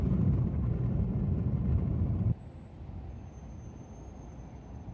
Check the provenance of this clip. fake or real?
real